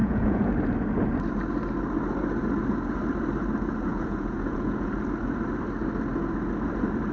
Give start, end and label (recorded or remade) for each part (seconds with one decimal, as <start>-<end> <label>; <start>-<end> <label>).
0.0-0.5 remade; 0.5-3.9 recorded; 3.9-4.9 remade; 4.9-7.1 recorded